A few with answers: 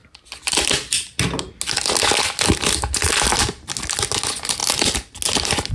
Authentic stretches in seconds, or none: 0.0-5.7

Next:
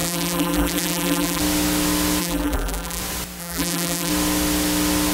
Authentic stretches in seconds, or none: 1.4-2.2; 3.0-3.4; 4.1-5.1

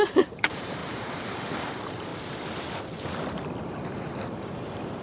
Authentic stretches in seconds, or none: 2.1-3.6